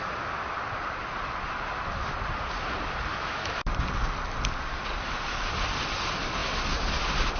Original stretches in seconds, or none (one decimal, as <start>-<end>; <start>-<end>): 0.0-3.1; 3.7-7.4